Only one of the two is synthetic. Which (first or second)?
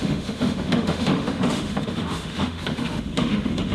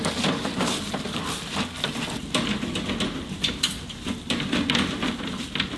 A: first